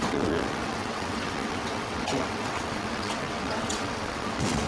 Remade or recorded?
remade